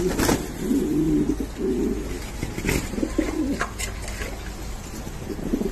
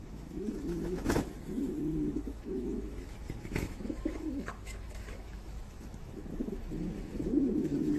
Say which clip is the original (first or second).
first